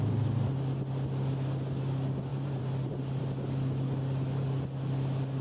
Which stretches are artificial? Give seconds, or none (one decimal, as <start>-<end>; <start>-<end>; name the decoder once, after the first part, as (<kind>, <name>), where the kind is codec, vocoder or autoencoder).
2.3-3.2 (vocoder, BigVGAN v2)